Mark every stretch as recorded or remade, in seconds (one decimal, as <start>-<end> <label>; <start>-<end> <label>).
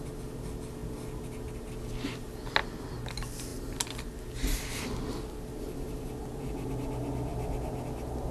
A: 0.0-8.3 recorded